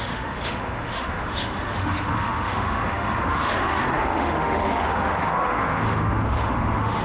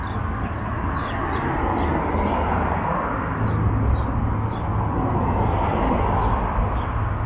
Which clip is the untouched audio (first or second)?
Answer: second